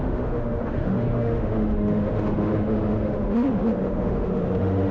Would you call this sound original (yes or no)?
no